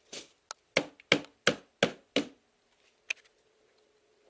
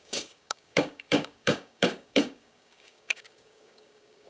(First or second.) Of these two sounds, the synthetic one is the second